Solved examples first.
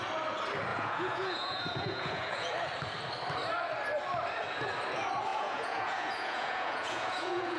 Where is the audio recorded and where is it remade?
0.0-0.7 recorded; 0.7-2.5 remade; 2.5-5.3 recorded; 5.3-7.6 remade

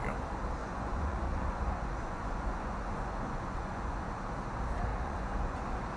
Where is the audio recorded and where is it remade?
0.0-0.6 recorded; 0.6-4.2 remade; 4.2-4.9 recorded; 4.9-5.6 remade; 5.6-6.0 recorded